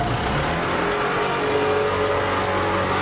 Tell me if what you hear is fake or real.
real